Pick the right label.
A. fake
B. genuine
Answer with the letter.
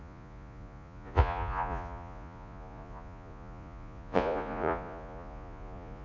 A